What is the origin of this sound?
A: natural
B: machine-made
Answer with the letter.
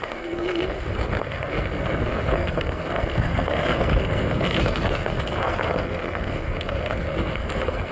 B